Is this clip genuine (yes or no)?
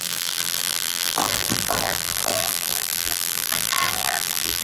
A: no